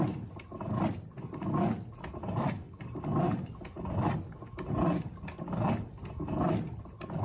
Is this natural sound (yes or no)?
yes